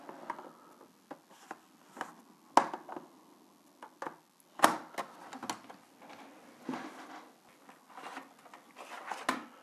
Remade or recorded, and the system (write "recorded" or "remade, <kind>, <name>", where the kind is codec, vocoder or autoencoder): recorded